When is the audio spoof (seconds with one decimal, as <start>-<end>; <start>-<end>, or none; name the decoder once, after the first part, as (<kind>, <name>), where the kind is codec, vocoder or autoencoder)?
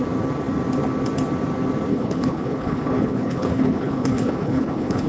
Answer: 1.9-5.1 (codec, HILCodec)